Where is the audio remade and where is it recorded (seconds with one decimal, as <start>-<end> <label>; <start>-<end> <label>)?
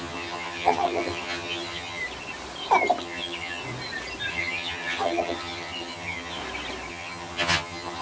0.0-2.0 remade; 2.0-3.0 recorded; 3.0-3.6 remade; 3.6-4.3 recorded; 4.3-6.4 remade; 6.4-6.9 recorded; 6.9-8.0 remade